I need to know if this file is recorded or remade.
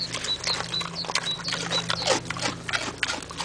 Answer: recorded